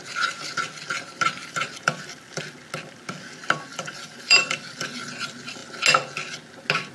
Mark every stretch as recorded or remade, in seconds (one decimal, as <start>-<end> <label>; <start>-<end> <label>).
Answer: 0.0-1.4 recorded; 1.4-2.4 remade; 2.4-3.7 recorded; 3.7-5.1 remade; 5.1-6.9 recorded